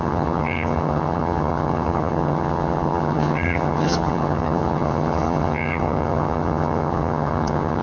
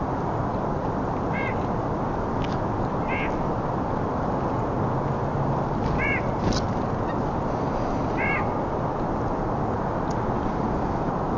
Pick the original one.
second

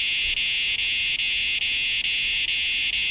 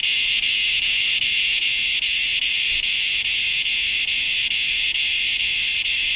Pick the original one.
first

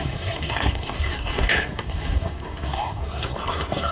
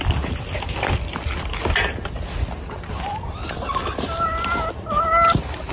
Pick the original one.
second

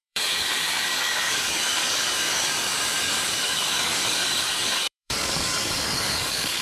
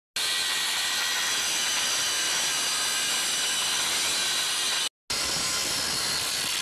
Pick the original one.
second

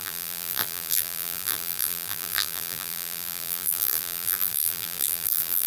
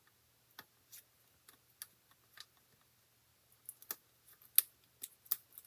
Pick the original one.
second